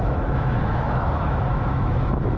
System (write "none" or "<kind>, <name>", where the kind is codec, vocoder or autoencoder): autoencoder, DAC-VAE